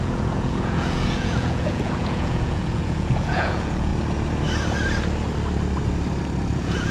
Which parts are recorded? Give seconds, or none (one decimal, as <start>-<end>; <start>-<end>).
3.9-6.5